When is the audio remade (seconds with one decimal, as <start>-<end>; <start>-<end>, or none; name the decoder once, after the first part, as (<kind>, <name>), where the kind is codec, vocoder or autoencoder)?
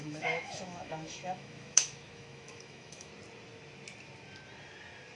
0.0-3.1 (autoencoder, DAC-VAE)